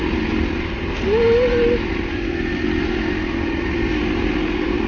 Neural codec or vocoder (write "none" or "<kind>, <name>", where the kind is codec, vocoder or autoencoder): none